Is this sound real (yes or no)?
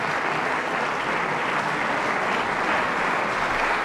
yes